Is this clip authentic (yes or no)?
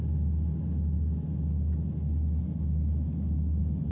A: yes